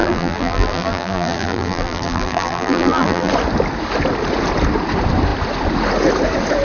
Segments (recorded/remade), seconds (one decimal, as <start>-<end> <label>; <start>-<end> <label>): 0.0-3.3 remade; 3.3-6.6 recorded

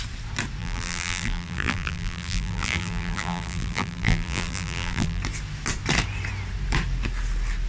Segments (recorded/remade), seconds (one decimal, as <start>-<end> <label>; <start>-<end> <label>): 0.0-0.6 recorded; 0.6-5.2 remade; 5.2-7.7 recorded